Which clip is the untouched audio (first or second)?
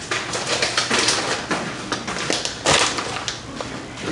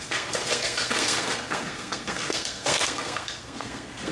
first